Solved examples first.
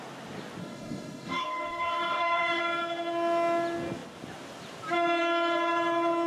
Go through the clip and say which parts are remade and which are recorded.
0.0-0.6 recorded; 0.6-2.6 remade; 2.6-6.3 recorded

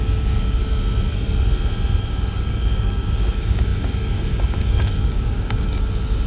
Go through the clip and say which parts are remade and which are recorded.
0.0-0.6 remade; 0.6-2.0 recorded; 2.0-6.3 remade

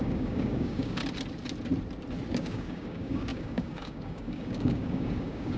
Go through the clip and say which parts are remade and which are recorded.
0.0-1.0 remade; 1.0-2.3 recorded; 2.3-5.6 remade

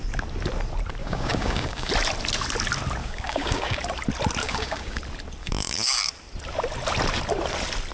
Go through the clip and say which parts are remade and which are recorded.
0.0-1.0 recorded; 1.0-1.9 remade; 1.9-3.0 recorded; 3.0-3.8 remade; 3.8-4.4 recorded; 4.4-5.0 remade; 5.0-5.4 recorded; 5.4-6.1 remade; 6.1-7.9 recorded

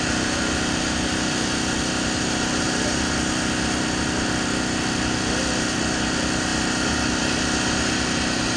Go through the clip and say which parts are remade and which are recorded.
0.0-8.6 recorded

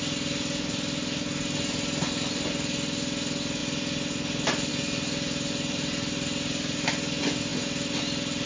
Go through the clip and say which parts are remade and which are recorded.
0.0-8.5 recorded

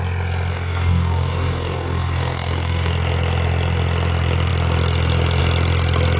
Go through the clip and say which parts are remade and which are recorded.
0.0-0.5 recorded; 0.5-2.9 remade; 2.9-6.2 recorded